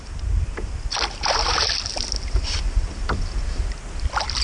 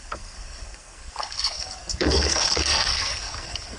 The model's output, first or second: second